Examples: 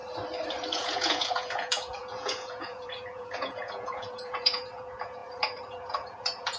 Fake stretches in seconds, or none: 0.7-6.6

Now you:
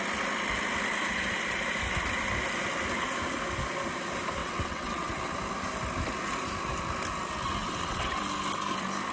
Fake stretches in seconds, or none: 4.4-5.3; 7.6-8.2